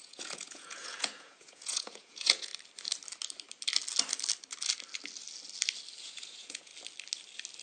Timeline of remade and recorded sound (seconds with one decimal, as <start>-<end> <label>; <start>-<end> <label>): 0.0-2.5 remade; 2.5-6.0 recorded; 6.0-6.7 remade; 6.7-7.6 recorded